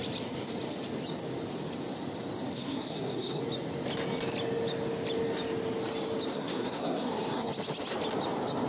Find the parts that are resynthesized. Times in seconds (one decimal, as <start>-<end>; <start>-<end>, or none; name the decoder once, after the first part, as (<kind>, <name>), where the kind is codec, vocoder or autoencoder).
2.5-3.4 (codec, SNAC); 6.3-7.5